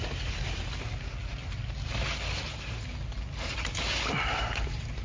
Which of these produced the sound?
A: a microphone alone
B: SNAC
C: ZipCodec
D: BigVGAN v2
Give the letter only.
A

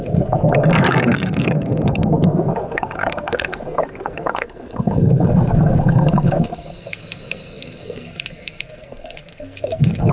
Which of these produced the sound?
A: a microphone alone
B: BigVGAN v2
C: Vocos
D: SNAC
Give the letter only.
D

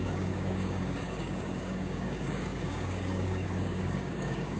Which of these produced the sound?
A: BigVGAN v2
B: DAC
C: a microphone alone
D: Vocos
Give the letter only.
B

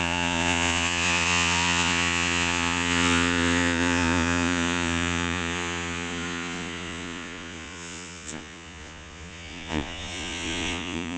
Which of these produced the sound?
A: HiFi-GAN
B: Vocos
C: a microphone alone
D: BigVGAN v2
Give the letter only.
B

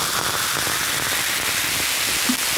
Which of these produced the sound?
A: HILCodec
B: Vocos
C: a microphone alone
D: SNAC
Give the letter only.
C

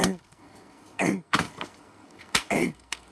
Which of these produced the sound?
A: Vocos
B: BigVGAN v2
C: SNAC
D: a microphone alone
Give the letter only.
C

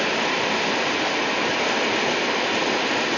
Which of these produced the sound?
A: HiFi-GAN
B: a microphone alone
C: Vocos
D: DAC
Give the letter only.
B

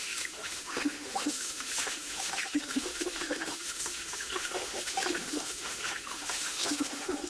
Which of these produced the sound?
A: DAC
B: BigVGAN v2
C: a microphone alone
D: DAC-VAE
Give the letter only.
D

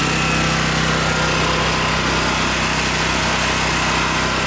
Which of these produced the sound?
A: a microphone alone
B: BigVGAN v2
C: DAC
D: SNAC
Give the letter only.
A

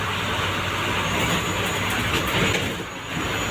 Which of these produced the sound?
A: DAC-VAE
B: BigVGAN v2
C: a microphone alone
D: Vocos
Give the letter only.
C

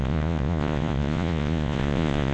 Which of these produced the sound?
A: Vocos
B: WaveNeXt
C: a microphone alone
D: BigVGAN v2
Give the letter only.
A